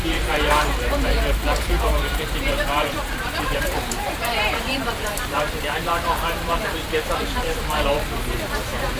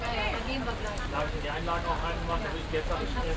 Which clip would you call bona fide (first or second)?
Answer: second